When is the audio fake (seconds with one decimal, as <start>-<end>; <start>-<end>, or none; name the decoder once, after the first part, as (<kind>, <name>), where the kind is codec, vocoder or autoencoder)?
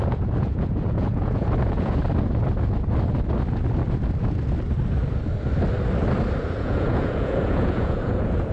0.0-2.0 (vocoder, Vocos); 6.4-8.5